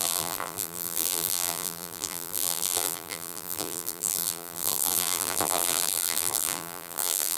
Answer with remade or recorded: remade